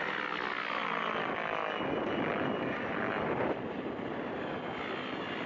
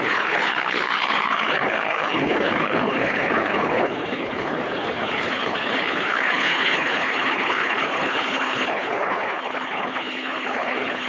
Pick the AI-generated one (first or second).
second